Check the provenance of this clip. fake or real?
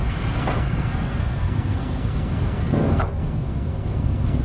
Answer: fake